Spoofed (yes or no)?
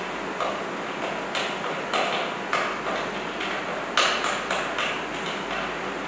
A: no